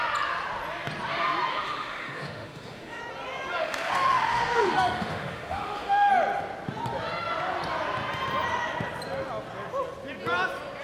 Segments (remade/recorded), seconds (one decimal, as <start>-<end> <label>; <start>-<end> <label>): 0.0-1.5 recorded; 1.5-3.0 remade; 3.0-3.6 recorded; 3.6-6.1 remade; 6.1-10.8 recorded